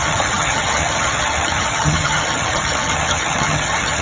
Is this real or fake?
fake